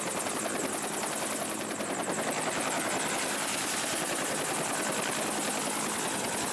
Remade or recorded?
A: recorded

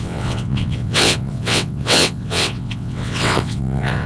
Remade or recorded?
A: remade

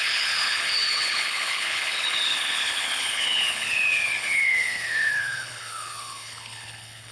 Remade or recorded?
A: remade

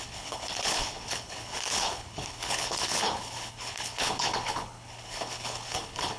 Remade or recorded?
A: remade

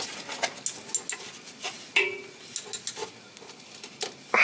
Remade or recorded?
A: recorded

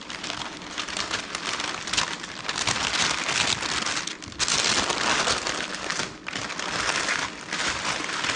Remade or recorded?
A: recorded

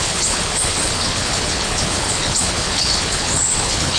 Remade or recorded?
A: remade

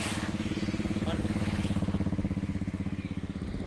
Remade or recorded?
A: recorded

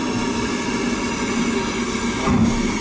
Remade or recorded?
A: recorded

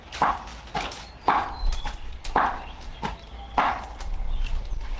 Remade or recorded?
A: recorded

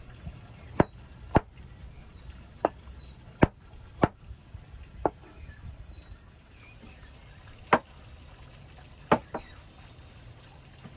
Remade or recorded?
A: recorded